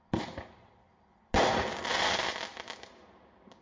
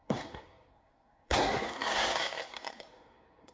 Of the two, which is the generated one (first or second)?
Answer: second